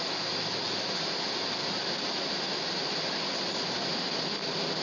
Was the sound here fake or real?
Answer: real